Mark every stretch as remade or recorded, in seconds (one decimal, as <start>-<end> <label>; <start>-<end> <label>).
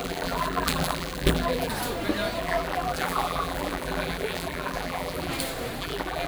0.0-1.7 remade; 1.7-2.4 recorded; 2.4-5.3 remade; 5.3-5.8 recorded; 5.8-6.3 remade